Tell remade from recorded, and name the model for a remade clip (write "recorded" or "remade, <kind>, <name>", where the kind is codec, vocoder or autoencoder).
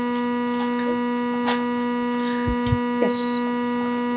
recorded